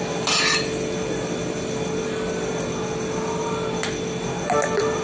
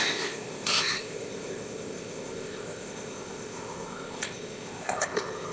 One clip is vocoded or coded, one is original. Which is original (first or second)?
first